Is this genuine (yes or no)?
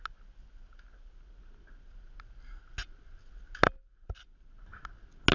yes